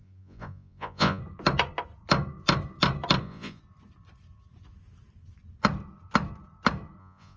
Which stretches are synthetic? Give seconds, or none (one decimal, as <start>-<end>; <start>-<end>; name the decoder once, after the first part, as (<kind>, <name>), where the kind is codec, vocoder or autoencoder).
0.0-1.2 (vocoder, Vocos); 3.2-3.6; 7.0-7.4